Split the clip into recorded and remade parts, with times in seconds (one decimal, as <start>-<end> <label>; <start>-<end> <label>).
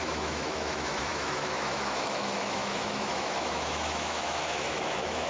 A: 0.0-5.3 remade